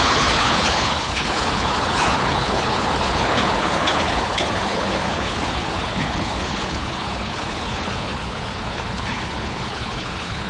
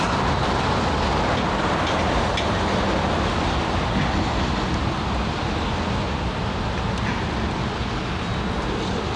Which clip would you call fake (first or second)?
first